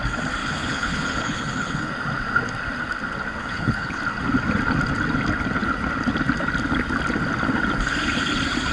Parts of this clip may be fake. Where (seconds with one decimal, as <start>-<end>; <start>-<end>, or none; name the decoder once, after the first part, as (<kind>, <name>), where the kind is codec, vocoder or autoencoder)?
0.4-1.9 (codec, HILCodec); 3.4-4.0